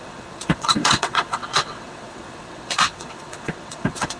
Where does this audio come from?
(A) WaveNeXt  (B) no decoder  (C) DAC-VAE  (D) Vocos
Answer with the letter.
A